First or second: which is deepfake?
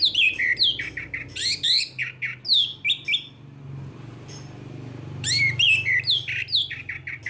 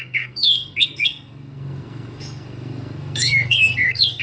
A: second